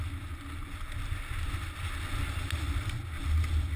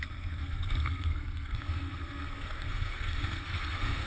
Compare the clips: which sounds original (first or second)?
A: first